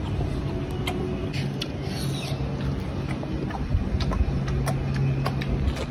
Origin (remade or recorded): recorded